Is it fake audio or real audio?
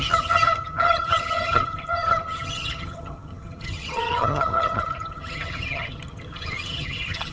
fake